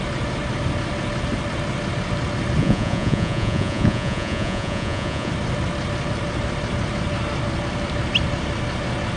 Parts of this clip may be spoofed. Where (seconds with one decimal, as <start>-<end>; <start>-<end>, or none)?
2.6-5.3